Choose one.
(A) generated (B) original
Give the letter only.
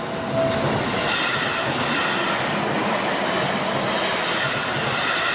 B